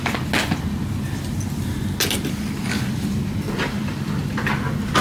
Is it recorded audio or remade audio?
recorded